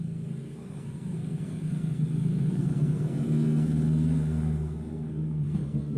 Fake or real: fake